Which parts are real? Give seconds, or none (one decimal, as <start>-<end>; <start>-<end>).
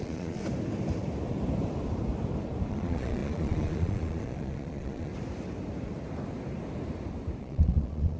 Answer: 0.4-2.7; 5.1-7.4